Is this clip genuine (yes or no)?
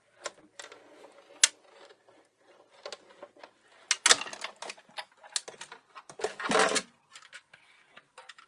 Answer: yes